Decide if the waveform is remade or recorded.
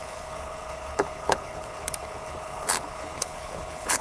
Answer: remade